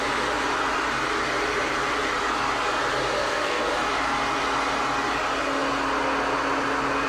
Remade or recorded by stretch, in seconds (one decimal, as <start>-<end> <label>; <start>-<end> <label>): 0.0-3.2 recorded; 3.2-3.7 remade; 3.7-7.1 recorded